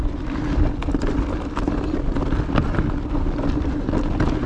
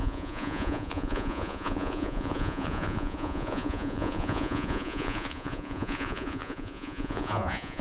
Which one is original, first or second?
first